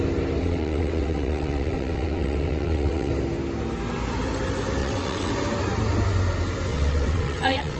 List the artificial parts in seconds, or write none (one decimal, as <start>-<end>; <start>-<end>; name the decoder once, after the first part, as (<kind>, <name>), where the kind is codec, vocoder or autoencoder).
0.4-3.1 (vocoder, WaveNeXt); 4.8-5.3; 6.7-7.8